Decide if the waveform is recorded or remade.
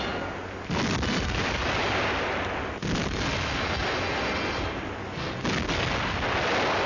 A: recorded